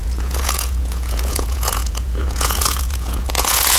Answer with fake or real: fake